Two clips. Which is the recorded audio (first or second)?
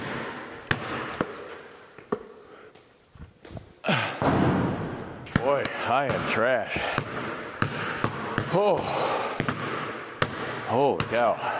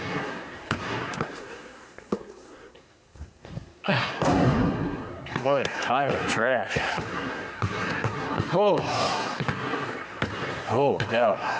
first